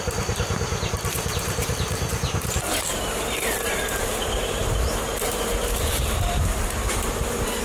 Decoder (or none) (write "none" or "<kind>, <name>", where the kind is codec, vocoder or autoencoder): vocoder, BigVGAN v2